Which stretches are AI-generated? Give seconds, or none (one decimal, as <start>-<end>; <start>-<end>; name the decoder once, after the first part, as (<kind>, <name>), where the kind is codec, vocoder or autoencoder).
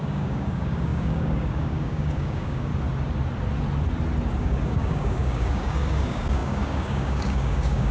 0.0-2.7 (codec, DAC); 4.4-7.9